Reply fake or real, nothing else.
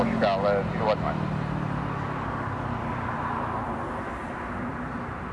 real